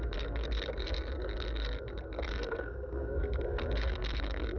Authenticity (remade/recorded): remade